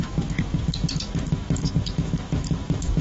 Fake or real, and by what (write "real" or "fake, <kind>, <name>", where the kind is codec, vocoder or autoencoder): fake, autoencoder, DAC-VAE